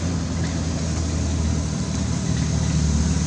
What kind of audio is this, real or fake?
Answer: real